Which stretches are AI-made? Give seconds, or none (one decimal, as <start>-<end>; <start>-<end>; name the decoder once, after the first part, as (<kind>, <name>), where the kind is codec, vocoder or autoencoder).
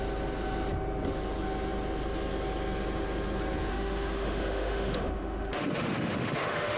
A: 3.7-6.8 (autoencoder, DAC-VAE)